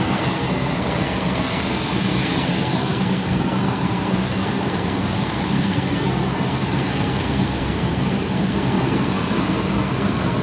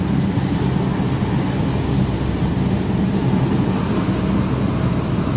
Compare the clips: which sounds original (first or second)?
second